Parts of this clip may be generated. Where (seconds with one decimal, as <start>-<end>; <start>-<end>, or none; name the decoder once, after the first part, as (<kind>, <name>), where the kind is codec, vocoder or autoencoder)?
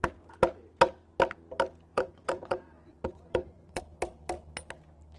1.9-3.8 (vocoder, Vocos)